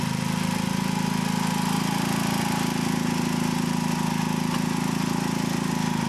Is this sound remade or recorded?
recorded